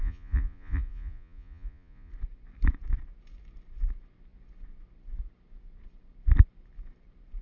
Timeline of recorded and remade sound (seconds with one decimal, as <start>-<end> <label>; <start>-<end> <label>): 0.0-2.1 remade; 2.1-7.4 recorded